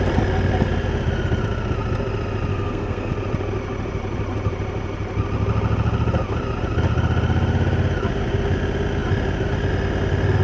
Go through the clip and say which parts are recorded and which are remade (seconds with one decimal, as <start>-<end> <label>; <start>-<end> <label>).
0.0-2.5 recorded; 2.5-3.1 remade; 3.1-10.4 recorded